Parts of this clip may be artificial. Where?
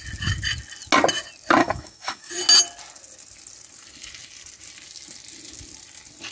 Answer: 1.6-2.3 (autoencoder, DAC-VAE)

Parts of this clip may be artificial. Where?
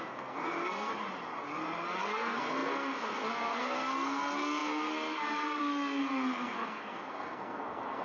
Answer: 0.0-0.9 (codec, SNAC); 2.0-8.0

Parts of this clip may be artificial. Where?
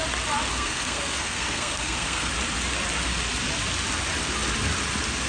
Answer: 0.5-2.3 (codec, SNAC)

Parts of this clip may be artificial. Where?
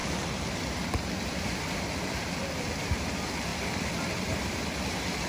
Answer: 0.0-2.9 (vocoder, BigVGAN v2); 3.5-4.6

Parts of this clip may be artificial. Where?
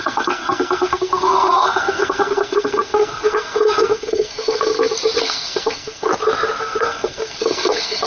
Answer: 0.0-4.7 (codec, SNAC); 5.2-6.1; 6.6-8.1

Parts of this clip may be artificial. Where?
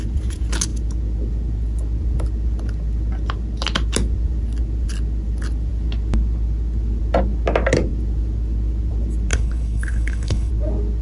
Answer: 9.3-10.5 (codec, HILCodec)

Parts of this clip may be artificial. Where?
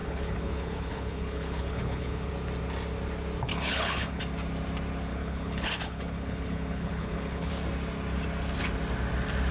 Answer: 0.0-2.3 (codec, HILCodec); 3.5-4.2; 5.1-7.5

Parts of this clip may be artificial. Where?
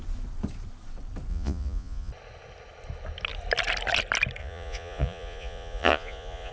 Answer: 1.3-2.1 (vocoder, Vocos); 4.4-6.5